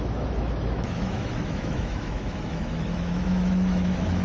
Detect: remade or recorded remade